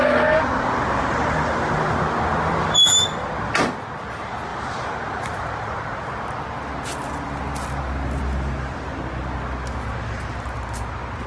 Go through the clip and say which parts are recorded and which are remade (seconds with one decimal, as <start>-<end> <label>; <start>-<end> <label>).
0.0-11.3 recorded

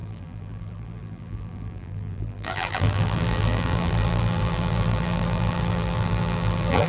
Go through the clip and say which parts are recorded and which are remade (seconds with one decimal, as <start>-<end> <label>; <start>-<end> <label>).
0.0-6.9 remade

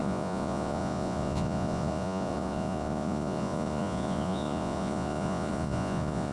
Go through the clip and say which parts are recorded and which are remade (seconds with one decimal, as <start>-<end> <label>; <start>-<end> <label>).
0.0-6.3 remade

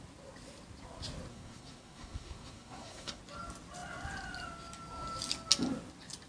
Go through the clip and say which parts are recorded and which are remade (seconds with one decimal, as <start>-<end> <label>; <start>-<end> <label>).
0.0-1.3 recorded; 1.3-3.2 remade; 3.2-6.3 recorded

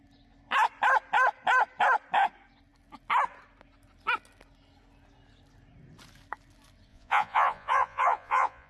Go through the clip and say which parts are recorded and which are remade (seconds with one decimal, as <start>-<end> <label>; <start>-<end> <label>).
0.0-6.9 recorded; 6.9-8.7 remade